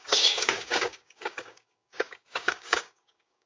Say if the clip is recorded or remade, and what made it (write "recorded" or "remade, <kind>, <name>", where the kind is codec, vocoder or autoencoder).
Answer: remade, codec, DAC